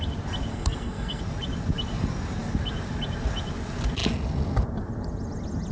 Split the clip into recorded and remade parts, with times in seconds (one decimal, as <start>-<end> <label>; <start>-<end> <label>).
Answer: 0.0-0.5 recorded; 0.5-1.2 remade; 1.2-5.7 recorded